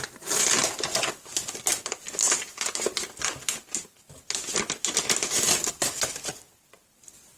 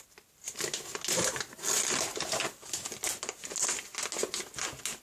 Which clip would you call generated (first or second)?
first